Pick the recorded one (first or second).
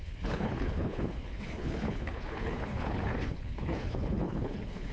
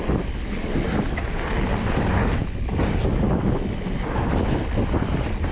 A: second